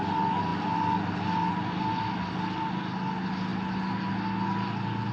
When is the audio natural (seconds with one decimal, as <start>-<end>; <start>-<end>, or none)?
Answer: 0.0-5.1